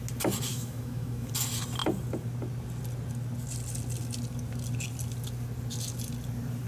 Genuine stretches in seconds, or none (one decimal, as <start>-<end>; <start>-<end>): 0.0-0.5; 1.3-6.7

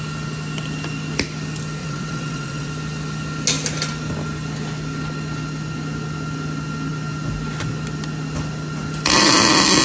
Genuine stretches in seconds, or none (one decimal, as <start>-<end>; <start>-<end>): 0.0-1.8; 2.7-9.8

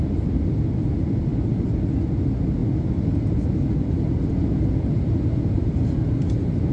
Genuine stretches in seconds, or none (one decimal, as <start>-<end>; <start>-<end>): 0.0-6.7

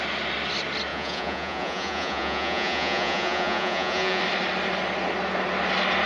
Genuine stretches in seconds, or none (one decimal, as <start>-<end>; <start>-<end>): 0.0-0.9; 4.2-6.1

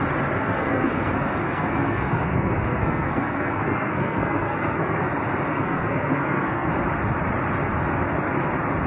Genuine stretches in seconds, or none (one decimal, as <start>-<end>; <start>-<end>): 0.0-0.4; 5.1-5.5; 6.7-8.9

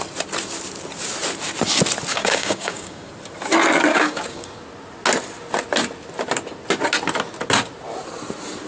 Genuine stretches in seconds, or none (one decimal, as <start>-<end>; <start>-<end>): 0.0-2.1; 3.1-3.9; 4.6-8.7

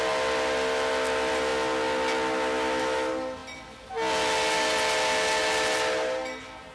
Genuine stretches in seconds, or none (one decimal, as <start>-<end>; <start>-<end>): 0.0-6.7

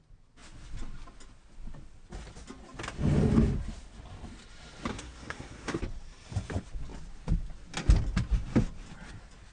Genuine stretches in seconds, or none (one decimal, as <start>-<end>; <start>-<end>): 0.0-4.9; 5.8-9.5